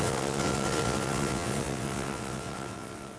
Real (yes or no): no